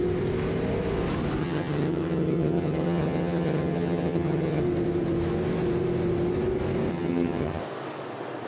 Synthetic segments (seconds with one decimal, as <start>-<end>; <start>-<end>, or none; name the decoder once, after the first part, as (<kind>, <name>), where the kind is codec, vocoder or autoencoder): 1.4-4.6 (vocoder, HiFi-GAN); 6.9-7.6